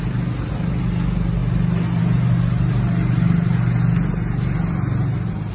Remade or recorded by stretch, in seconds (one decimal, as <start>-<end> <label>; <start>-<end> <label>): 0.0-5.5 recorded